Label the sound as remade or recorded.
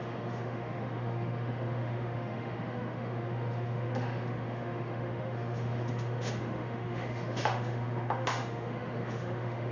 remade